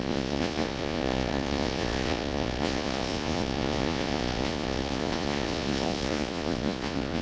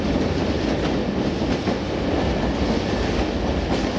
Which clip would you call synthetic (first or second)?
first